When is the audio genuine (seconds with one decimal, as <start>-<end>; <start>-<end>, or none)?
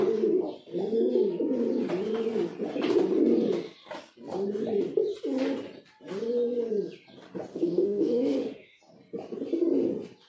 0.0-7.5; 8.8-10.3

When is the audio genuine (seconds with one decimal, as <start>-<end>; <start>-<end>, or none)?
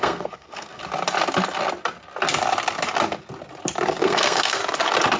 0.8-3.9; 4.6-5.2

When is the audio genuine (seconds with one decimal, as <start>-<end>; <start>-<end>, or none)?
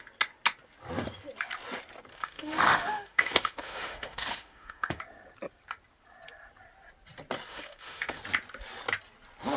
0.0-2.1; 5.0-7.5; 8.2-9.6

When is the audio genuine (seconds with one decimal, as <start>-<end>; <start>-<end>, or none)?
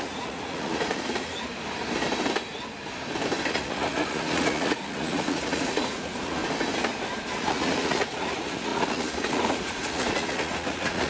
1.5-3.5; 6.4-7.3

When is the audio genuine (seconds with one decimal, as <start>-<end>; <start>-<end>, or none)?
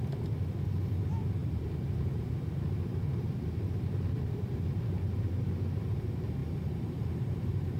0.0-1.4; 5.8-6.4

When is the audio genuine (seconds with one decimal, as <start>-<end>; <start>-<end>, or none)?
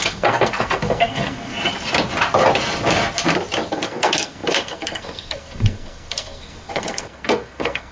1.5-3.7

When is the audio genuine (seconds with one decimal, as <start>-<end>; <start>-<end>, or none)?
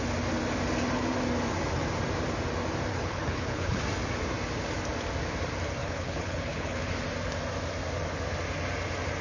0.0-2.9; 3.8-5.8; 7.0-9.2